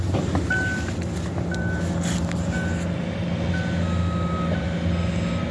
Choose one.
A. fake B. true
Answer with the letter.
B